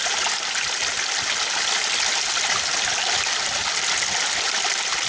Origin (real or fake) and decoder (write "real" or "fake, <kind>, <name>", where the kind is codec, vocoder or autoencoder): real